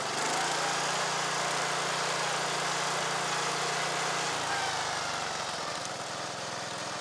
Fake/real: real